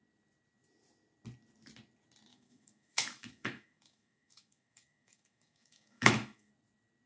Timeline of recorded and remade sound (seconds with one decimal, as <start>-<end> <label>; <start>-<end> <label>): 0.0-2.3 recorded; 2.3-6.5 remade; 6.5-7.1 recorded